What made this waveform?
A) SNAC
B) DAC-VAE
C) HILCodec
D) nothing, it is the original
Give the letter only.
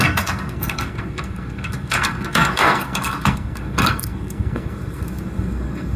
A